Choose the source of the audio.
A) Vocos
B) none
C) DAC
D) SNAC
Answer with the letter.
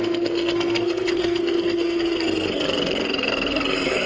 D